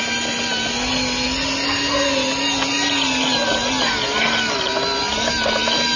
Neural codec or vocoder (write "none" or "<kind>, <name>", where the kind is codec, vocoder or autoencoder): none